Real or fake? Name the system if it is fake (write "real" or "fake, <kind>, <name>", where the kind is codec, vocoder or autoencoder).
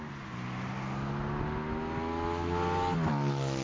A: real